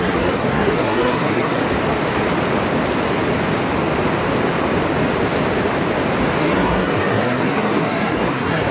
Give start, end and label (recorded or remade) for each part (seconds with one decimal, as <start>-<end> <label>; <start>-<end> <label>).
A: 0.0-1.6 remade; 1.6-6.4 recorded; 6.4-8.7 remade